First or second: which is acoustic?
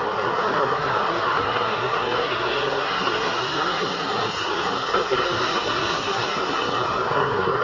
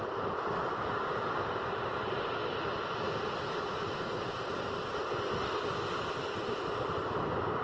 second